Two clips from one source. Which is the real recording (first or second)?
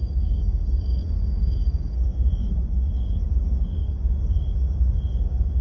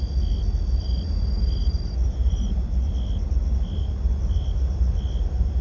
second